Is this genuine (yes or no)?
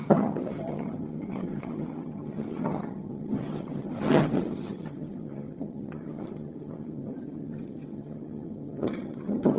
no